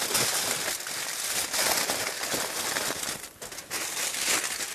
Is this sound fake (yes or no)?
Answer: no